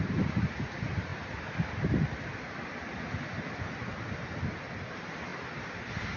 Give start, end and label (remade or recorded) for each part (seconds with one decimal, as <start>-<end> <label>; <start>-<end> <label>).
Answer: 0.0-6.2 recorded